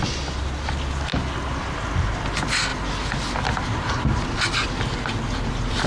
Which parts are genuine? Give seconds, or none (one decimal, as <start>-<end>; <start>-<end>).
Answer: 0.0-5.9